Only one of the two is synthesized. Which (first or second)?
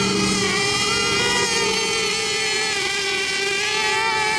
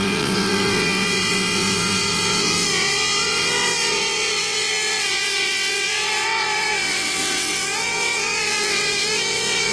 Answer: second